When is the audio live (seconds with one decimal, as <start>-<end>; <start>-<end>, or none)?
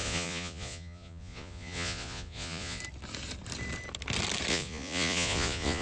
2.8-4.5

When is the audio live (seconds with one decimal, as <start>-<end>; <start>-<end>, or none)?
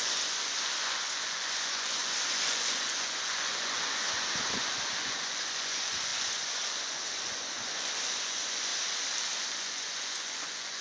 8.7-9.4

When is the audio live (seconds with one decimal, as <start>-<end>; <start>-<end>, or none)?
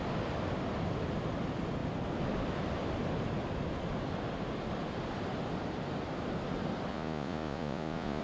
0.0-6.9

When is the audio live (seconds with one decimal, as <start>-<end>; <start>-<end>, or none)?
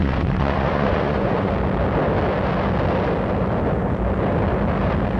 1.5-5.2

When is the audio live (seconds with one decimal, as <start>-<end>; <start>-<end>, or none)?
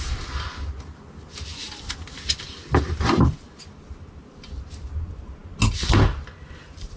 0.0-7.0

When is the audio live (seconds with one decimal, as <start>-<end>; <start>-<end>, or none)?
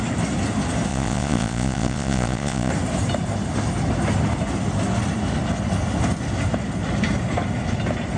0.0-0.9; 2.7-8.2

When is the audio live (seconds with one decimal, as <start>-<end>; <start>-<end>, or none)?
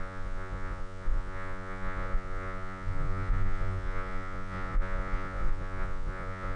none